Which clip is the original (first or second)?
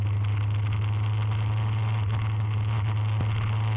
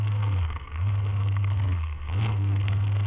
first